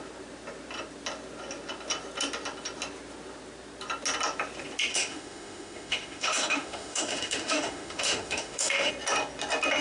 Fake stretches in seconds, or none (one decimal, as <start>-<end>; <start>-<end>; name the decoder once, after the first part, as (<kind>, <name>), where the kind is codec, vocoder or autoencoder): 4.9-8.9 (autoencoder, DAC-VAE)